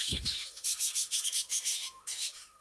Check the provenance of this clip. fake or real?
fake